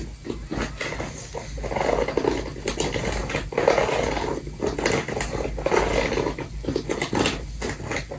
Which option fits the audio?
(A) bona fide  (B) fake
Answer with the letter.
A